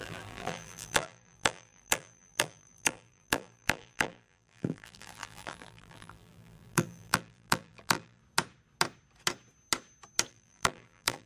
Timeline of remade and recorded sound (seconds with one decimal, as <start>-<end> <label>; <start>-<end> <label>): 0.0-8.2 remade; 8.2-10.3 recorded; 10.3-11.3 remade